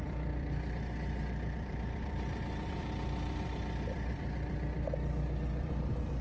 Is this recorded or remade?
remade